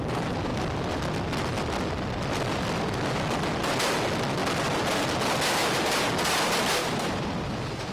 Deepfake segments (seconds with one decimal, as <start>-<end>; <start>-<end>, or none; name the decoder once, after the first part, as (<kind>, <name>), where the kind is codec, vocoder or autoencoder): 6.8-7.4 (vocoder, BigVGAN v2)